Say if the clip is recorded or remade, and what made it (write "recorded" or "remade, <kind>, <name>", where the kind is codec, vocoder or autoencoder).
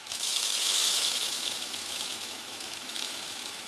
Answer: remade, autoencoder, DAC-VAE